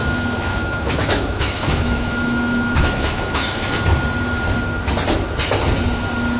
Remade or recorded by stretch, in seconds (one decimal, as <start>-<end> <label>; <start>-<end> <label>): 0.0-3.8 remade; 3.8-6.4 recorded

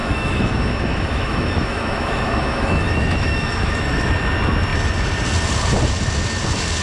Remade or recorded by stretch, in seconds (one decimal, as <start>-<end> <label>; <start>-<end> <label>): 0.0-4.1 remade; 4.1-6.8 recorded